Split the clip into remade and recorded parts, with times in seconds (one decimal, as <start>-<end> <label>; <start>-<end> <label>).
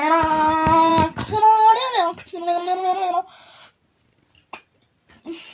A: 0.0-5.5 recorded